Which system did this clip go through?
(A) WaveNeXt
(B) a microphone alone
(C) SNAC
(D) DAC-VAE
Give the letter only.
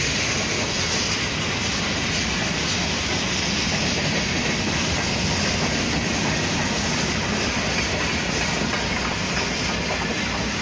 B